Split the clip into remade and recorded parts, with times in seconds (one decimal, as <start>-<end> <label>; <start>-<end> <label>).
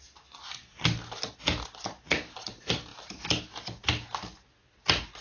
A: 0.0-5.2 recorded